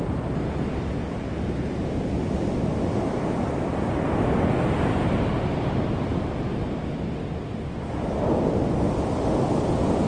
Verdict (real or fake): real